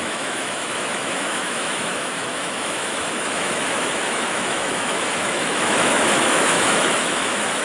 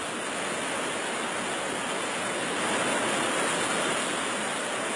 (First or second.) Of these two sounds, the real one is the second